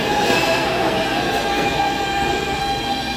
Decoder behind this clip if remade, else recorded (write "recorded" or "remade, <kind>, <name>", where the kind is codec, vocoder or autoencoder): remade, codec, SNAC